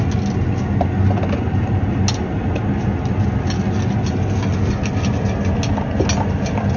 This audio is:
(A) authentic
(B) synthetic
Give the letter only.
A